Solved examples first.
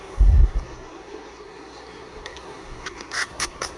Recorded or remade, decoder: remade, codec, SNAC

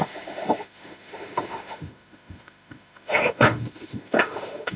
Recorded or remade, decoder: remade, autoencoder, DAC-VAE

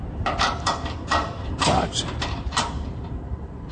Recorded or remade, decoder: remade, vocoder, BigVGAN v2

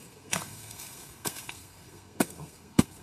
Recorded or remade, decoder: remade, codec, SNAC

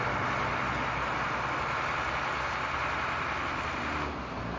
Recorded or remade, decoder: recorded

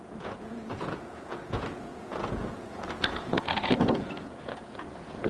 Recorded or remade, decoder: remade, vocoder, Vocos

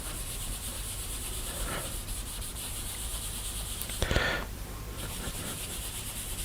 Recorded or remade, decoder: remade, vocoder, BigVGAN v2